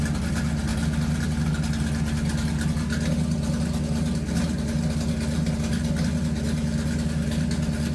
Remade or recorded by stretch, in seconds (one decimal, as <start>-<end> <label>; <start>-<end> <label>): 0.0-7.9 recorded